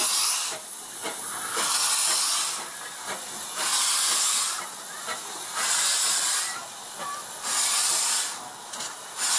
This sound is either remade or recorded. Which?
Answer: recorded